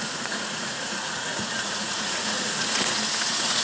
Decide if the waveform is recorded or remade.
remade